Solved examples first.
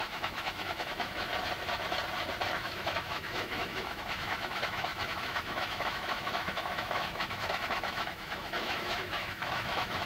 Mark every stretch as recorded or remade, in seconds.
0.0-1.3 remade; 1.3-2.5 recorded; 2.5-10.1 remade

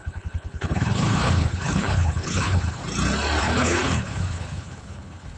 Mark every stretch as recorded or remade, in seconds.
0.0-2.8 remade; 2.8-3.4 recorded; 3.4-5.4 remade

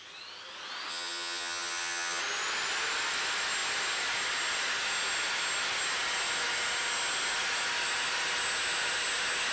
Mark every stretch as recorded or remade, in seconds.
0.0-0.9 recorded; 0.9-2.2 remade; 2.2-9.5 recorded

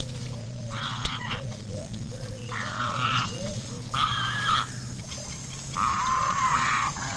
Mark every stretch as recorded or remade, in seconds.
0.0-0.4 recorded; 0.4-3.7 remade; 3.7-5.9 recorded; 5.9-7.2 remade

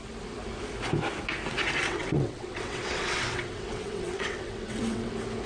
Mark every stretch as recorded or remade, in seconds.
0.0-1.8 recorded; 1.8-5.1 remade; 5.1-5.5 recorded